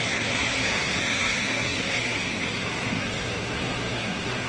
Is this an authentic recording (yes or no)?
no